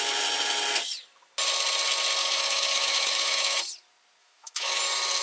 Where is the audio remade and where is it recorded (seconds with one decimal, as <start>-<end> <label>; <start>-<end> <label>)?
0.0-2.2 recorded; 2.2-3.6 remade; 3.6-4.2 recorded; 4.2-4.8 remade; 4.8-5.2 recorded

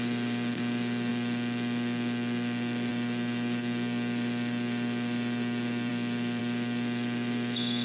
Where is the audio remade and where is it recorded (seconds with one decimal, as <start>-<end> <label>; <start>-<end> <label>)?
0.0-7.8 recorded

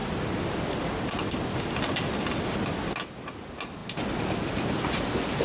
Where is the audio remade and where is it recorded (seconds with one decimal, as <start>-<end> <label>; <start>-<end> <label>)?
0.0-5.4 recorded

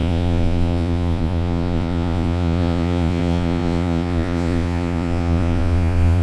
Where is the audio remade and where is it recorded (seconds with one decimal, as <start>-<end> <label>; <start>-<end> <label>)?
0.0-6.2 remade

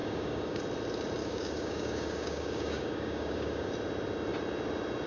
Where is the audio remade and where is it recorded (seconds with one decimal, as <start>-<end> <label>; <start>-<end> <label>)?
0.0-0.6 remade; 0.6-1.2 recorded; 1.2-3.7 remade; 3.7-5.1 recorded